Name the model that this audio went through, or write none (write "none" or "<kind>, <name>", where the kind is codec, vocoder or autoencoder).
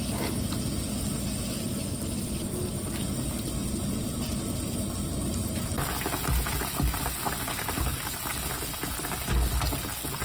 none